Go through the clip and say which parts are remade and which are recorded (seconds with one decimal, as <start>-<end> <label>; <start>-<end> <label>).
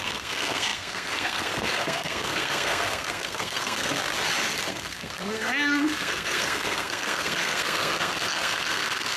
0.0-4.0 remade; 4.0-4.7 recorded; 4.7-9.2 remade